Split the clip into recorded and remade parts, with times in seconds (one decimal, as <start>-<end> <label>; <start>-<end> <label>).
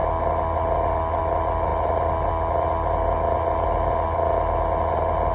0.0-5.3 recorded